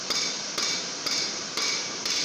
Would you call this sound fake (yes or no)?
yes